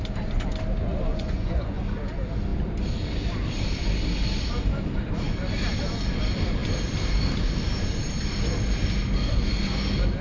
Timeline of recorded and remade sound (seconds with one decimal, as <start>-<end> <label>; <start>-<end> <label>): 0.0-1.1 recorded; 1.1-1.8 remade; 1.8-10.2 recorded